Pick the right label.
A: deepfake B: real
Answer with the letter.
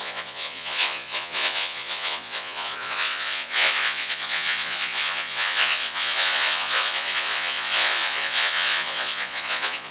A